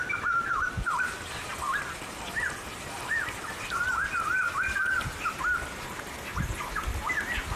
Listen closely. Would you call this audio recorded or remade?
recorded